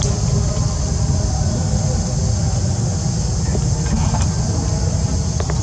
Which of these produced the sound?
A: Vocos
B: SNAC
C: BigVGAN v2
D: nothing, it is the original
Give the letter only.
D